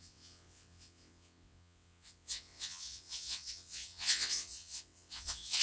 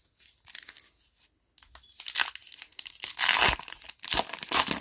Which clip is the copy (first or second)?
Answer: first